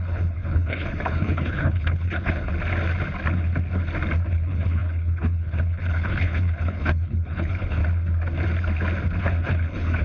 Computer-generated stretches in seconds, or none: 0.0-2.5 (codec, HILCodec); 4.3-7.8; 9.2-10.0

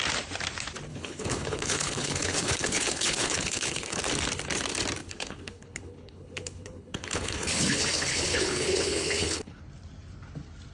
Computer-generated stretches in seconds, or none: 0.9-4.0 (codec, HILCodec); 5.0-9.6